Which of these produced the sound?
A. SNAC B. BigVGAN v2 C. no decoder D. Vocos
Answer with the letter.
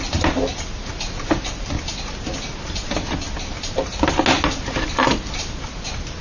C